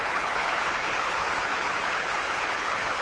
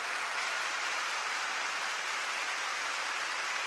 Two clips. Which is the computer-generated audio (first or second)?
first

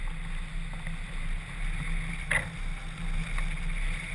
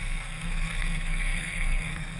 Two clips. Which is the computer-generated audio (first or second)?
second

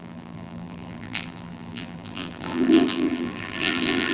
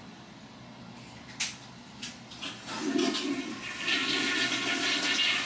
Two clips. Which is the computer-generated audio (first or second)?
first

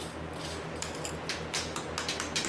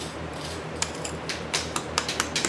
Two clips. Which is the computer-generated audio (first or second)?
second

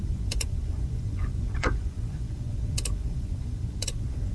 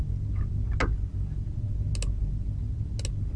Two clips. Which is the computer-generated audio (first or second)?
first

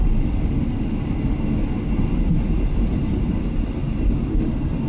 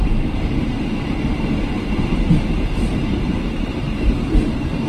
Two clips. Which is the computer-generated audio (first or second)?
second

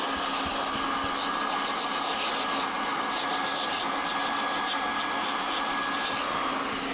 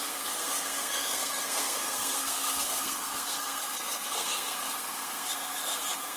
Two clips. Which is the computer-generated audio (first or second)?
second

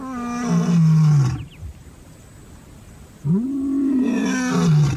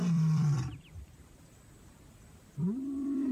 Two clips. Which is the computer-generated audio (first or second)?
second